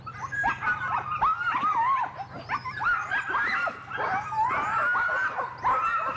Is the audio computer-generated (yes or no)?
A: no